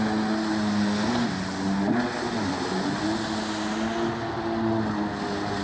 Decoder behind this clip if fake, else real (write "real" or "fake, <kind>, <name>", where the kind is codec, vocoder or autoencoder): real